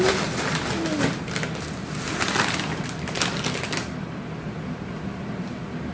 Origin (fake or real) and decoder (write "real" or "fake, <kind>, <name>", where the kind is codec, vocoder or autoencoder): real